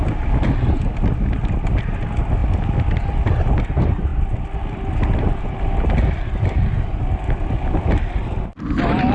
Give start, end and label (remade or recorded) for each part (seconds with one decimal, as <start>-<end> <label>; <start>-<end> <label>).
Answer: 0.0-4.1 recorded; 4.1-9.1 remade